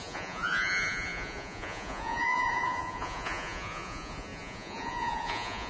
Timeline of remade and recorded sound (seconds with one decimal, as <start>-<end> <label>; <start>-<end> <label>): 0.0-5.7 remade